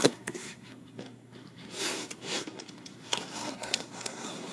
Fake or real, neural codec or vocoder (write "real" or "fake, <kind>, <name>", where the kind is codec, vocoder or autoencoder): fake, codec, SNAC